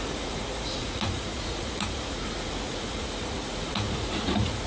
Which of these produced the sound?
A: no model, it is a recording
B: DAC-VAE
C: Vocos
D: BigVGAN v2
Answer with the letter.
C